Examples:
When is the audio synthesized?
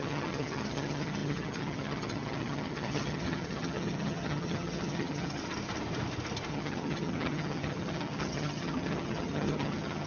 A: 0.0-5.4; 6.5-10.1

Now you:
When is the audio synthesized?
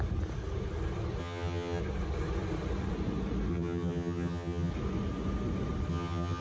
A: 1.2-1.8; 3.5-4.7; 5.9-6.4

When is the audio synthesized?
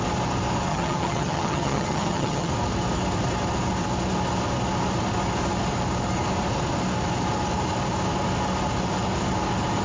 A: 0.7-2.5